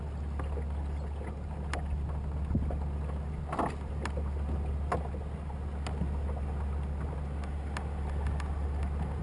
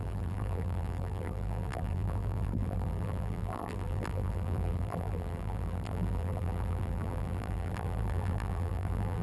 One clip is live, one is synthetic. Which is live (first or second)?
first